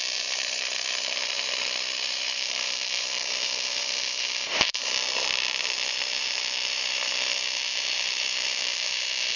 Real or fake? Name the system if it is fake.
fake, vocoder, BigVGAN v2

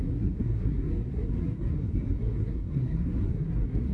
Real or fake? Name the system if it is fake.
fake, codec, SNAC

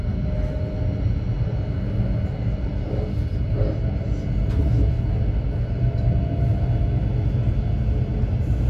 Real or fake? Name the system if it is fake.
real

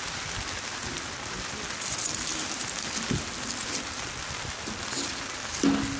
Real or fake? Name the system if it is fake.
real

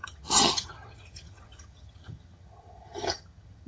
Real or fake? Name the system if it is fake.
fake, vocoder, HiFi-GAN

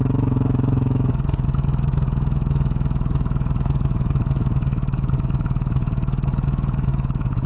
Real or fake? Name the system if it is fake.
fake, autoencoder, DAC-VAE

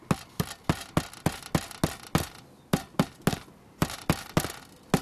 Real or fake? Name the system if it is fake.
real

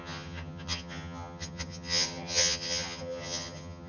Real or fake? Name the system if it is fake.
fake, vocoder, HiFi-GAN